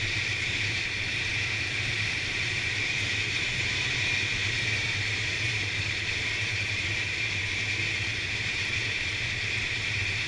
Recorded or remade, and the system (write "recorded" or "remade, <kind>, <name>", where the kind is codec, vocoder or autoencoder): remade, vocoder, BigVGAN v2